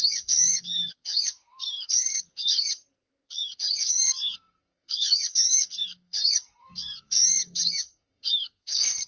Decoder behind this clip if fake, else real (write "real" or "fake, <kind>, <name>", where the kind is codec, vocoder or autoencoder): fake, codec, SNAC